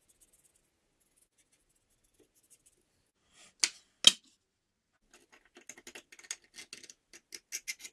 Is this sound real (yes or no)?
yes